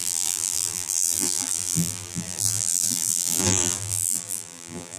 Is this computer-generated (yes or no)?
yes